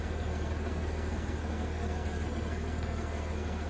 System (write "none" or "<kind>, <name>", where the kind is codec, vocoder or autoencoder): codec, SNAC